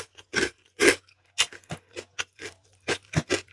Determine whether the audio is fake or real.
real